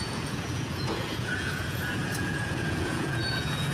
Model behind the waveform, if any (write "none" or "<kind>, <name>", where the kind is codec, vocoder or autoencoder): vocoder, Vocos